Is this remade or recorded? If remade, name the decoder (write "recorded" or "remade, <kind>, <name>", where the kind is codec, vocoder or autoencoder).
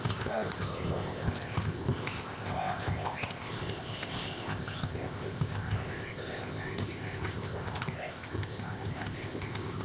remade, codec, ZipCodec